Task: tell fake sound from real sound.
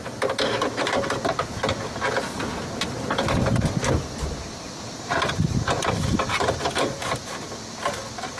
real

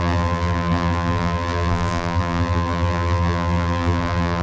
fake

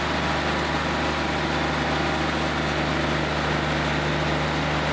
real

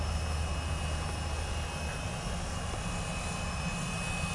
real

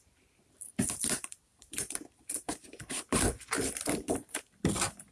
fake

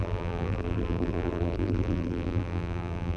fake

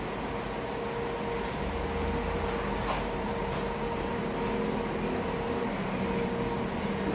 real